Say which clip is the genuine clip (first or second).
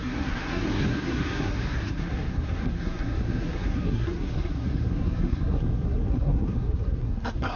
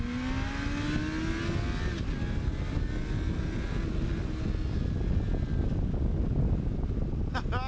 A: second